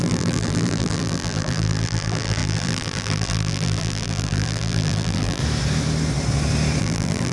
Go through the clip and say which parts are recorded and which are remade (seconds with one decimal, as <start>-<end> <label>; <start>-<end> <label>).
0.0-5.4 remade; 5.4-6.8 recorded; 6.8-7.3 remade